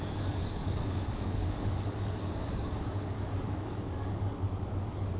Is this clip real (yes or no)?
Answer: no